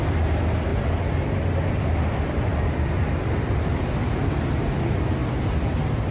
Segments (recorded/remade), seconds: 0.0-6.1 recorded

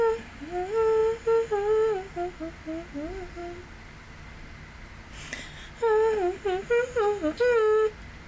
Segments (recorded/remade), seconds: 0.0-8.3 recorded

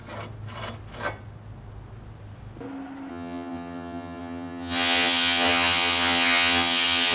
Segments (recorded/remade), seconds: 0.0-3.1 recorded; 3.1-7.1 remade

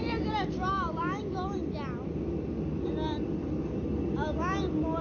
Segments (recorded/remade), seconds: 0.0-5.0 recorded

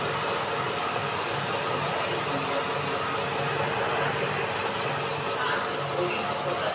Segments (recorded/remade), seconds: 0.0-0.8 recorded; 0.8-1.4 remade; 1.4-6.7 recorded

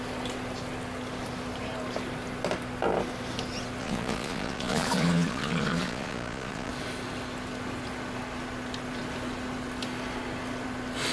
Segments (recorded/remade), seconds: 0.0-3.8 recorded; 3.8-6.7 remade; 6.7-11.1 recorded